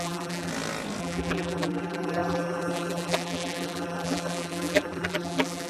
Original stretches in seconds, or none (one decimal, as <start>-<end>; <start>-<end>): 0.5-1.0